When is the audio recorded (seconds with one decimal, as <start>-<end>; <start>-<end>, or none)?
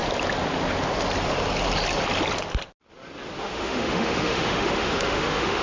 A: 0.0-3.4